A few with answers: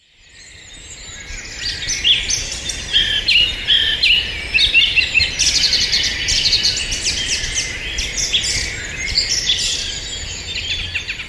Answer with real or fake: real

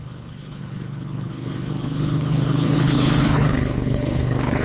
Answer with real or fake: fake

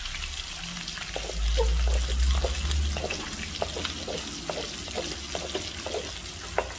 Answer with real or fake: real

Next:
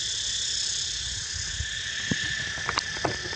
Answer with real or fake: real